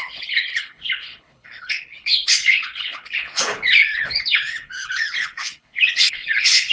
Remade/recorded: remade